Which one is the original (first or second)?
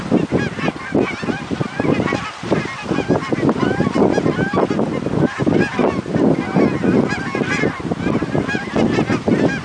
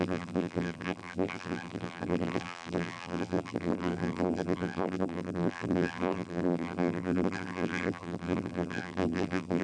first